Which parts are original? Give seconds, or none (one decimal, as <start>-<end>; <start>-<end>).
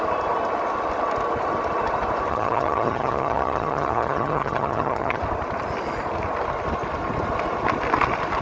0.0-2.3; 5.2-8.4